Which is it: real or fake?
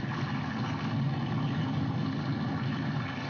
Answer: real